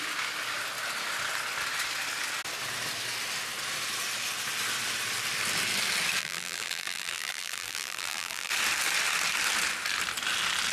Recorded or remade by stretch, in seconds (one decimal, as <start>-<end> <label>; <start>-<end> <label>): 0.0-6.2 recorded; 6.2-8.5 remade; 8.5-10.7 recorded